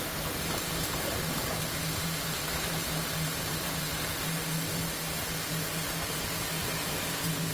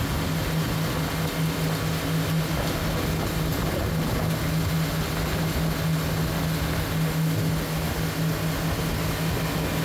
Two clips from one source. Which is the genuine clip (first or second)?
second